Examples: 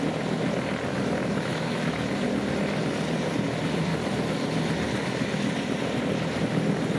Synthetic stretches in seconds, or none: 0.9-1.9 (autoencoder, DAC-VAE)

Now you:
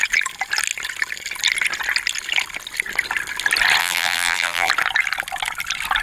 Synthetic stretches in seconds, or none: 3.8-4.7 (vocoder, BigVGAN v2)